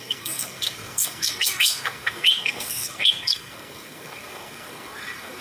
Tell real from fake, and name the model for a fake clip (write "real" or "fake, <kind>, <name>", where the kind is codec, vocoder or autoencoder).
fake, codec, SNAC